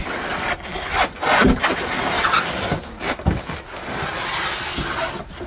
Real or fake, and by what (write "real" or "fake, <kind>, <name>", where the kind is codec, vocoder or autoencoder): real